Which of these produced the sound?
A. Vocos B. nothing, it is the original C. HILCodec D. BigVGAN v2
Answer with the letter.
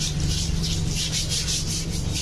B